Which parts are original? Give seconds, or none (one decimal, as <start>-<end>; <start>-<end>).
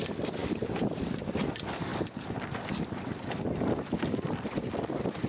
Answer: 0.0-5.3